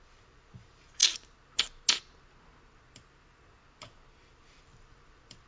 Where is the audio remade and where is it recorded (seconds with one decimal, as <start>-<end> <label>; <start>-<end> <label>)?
0.0-1.0 remade; 1.0-4.3 recorded; 4.3-5.5 remade